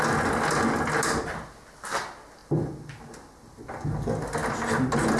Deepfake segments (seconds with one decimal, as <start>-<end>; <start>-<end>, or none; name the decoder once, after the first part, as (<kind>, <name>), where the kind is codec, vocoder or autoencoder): none